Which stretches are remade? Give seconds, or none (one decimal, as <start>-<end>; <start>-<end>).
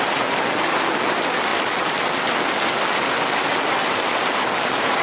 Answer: 1.5-2.4